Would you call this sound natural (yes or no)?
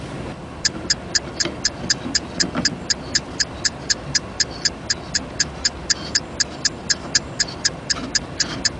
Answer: yes